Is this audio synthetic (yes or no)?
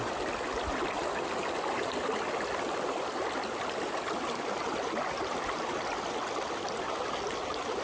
no